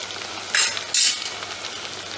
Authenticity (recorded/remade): recorded